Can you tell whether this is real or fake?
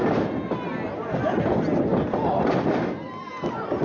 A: real